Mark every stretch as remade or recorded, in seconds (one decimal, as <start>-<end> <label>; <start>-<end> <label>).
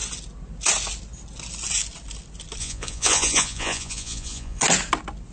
0.0-2.6 recorded; 2.6-4.6 remade; 4.6-5.3 recorded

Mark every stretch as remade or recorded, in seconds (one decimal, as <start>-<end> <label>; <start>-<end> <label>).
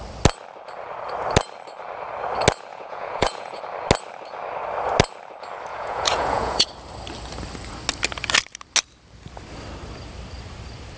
0.0-2.7 recorded; 2.7-3.6 remade; 3.6-5.7 recorded; 5.7-6.7 remade; 6.7-11.0 recorded